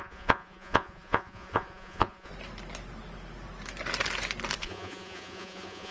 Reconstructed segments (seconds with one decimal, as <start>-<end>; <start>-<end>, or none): 0.0-2.3; 4.6-5.9